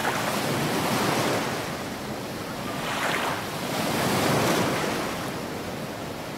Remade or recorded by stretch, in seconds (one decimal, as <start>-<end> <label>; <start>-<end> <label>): 0.0-6.4 recorded

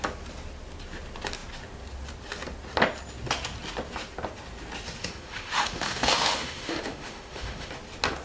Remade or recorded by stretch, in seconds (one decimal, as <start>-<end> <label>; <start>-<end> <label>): 0.0-5.0 recorded; 5.0-7.7 remade; 7.7-8.2 recorded

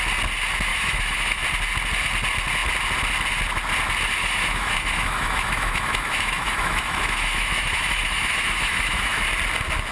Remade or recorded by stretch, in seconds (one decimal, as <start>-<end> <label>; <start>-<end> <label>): 0.0-0.7 recorded; 0.7-1.4 remade; 1.4-4.2 recorded; 4.2-9.2 remade; 9.2-9.9 recorded

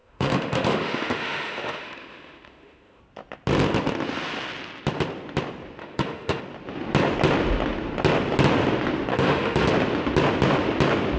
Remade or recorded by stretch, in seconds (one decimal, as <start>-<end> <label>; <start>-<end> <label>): 0.0-3.0 remade; 3.0-5.8 recorded; 5.8-6.4 remade; 6.4-9.1 recorded; 9.1-9.7 remade; 9.7-11.2 recorded

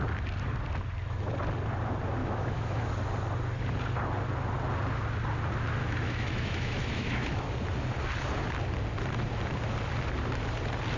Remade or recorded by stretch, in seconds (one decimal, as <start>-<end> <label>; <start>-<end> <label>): 0.0-2.2 recorded; 2.2-2.9 remade; 2.9-5.8 recorded; 5.8-7.5 remade; 7.5-11.0 recorded

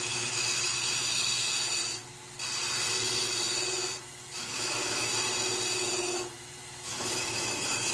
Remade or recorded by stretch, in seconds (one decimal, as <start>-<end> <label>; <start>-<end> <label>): 0.0-2.0 remade; 2.0-4.0 recorded; 4.0-5.1 remade; 5.1-6.0 recorded; 6.0-7.9 remade

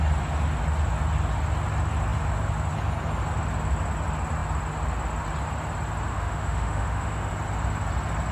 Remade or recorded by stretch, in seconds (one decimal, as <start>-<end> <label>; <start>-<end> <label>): 0.0-6.1 recorded; 6.1-7.3 remade; 7.3-8.3 recorded

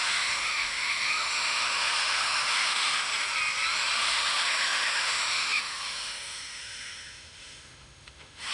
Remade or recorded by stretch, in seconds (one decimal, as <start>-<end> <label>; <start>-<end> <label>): 0.0-3.1 remade; 3.1-4.0 recorded; 4.0-8.5 remade